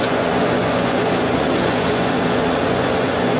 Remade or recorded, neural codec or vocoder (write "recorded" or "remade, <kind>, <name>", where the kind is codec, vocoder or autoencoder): remade, vocoder, Vocos